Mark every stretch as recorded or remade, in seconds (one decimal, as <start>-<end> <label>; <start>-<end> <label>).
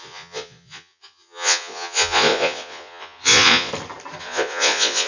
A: 0.0-3.7 remade; 3.7-4.2 recorded; 4.2-5.1 remade